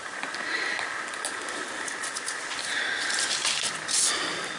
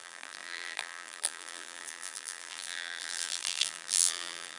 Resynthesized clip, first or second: second